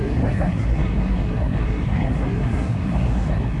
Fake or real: fake